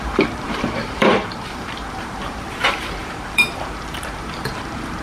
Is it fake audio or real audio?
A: fake